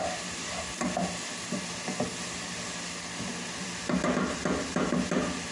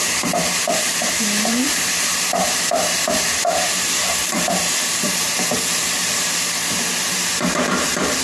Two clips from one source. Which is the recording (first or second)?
first